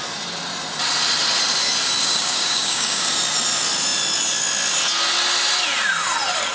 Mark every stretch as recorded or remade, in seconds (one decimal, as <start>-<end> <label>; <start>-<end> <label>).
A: 0.0-2.0 recorded; 2.0-3.1 remade; 3.1-6.5 recorded